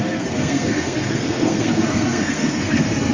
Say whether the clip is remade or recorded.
remade